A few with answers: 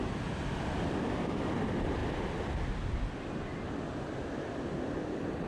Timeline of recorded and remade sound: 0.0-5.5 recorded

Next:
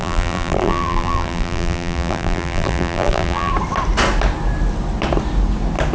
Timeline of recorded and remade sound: 0.0-3.5 remade; 3.5-5.9 recorded

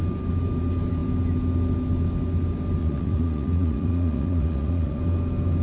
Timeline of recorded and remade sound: 0.0-2.8 recorded; 2.8-5.0 remade; 5.0-5.6 recorded

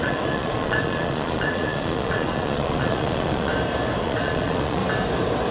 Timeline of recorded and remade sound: 0.0-3.5 remade; 3.5-4.0 recorded; 4.0-4.8 remade; 4.8-5.5 recorded